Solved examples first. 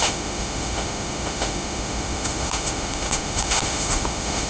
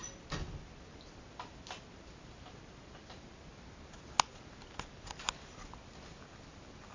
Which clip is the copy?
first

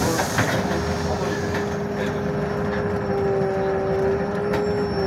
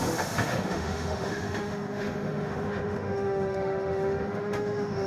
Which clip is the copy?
second